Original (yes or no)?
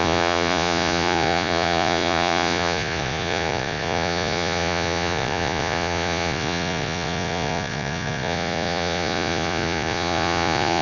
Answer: no